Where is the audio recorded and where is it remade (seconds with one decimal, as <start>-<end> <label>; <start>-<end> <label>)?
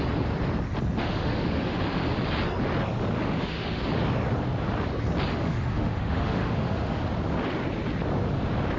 0.0-1.0 recorded; 1.0-1.8 remade; 1.8-3.2 recorded; 3.2-3.8 remade; 3.8-5.3 recorded; 5.3-7.0 remade; 7.0-8.8 recorded